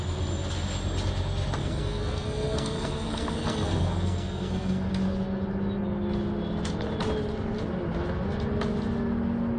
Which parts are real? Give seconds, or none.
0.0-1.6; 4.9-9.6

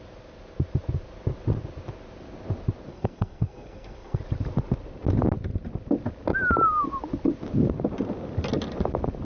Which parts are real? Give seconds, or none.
0.0-2.9; 4.2-9.2

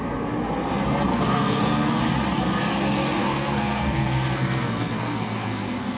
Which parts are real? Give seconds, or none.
0.0-1.1; 2.0-3.2

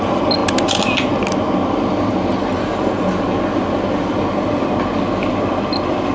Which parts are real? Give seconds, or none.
0.0-6.1

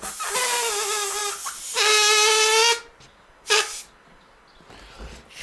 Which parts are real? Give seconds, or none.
0.0-5.4

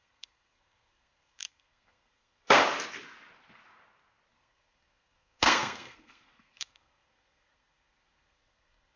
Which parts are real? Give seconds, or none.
2.6-4.3